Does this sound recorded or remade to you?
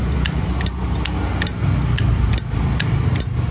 recorded